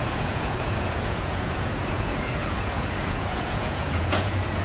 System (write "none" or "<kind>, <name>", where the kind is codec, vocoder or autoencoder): vocoder, Vocos